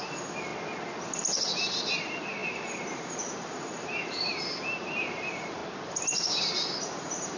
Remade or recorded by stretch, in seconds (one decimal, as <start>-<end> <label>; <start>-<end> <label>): 0.0-0.5 remade; 0.5-1.5 recorded; 1.5-5.6 remade; 5.6-6.4 recorded; 6.4-7.4 remade